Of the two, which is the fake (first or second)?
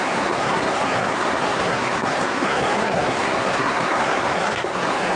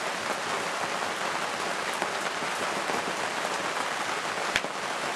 first